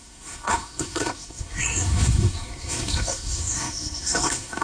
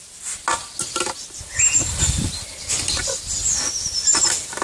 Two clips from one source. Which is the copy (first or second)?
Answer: first